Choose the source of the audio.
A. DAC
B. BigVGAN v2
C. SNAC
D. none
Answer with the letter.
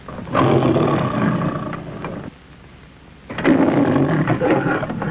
D